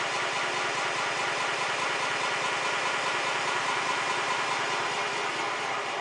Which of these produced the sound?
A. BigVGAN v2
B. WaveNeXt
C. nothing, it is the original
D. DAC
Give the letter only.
C